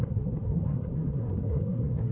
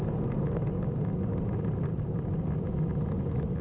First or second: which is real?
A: second